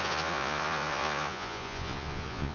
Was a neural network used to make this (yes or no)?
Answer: yes